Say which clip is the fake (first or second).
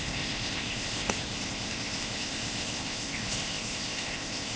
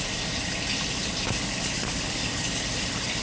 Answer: first